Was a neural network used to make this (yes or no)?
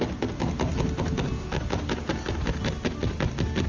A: no